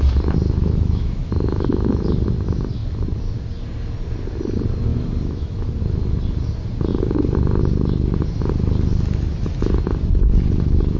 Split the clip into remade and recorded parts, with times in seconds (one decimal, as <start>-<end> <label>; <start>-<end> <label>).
0.0-0.6 recorded; 0.6-2.0 remade; 2.0-4.9 recorded; 4.9-5.8 remade; 5.8-11.0 recorded